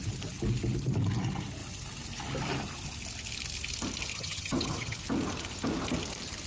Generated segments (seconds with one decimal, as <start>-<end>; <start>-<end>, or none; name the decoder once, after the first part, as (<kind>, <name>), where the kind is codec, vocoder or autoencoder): 4.1-5.0 (vocoder, HiFi-GAN)